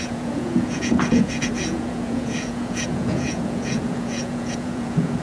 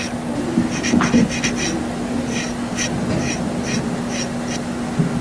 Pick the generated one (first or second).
first